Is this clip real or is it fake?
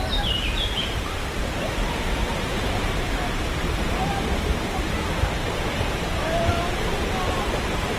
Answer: fake